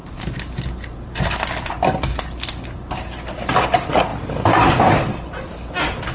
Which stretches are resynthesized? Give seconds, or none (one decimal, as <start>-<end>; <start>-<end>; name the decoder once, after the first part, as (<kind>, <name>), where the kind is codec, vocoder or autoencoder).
none